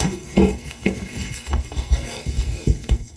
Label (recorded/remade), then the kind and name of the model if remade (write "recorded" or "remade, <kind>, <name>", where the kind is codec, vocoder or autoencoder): remade, codec, SNAC